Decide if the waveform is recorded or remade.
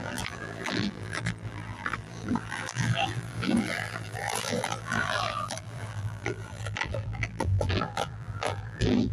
remade